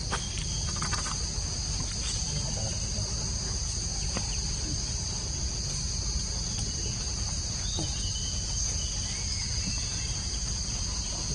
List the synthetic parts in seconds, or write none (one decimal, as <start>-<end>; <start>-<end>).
3.9-8.9